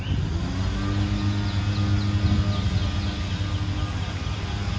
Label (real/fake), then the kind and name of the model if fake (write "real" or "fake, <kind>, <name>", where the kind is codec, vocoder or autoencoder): real